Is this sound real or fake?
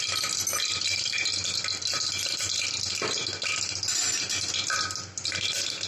real